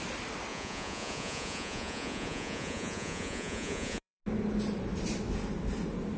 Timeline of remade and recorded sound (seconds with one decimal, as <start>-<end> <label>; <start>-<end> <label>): 0.0-0.5 recorded; 0.5-4.2 remade; 4.2-6.2 recorded